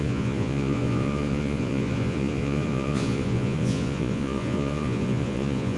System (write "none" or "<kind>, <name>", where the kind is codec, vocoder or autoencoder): vocoder, Vocos